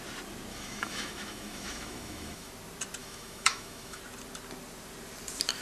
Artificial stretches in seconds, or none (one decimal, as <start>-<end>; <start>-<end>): 0.5-2.5; 3.0-4.0